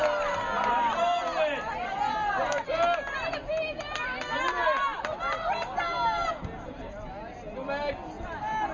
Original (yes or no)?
yes